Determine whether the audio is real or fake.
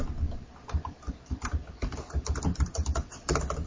real